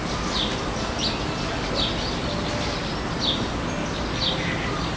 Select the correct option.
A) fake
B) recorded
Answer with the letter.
B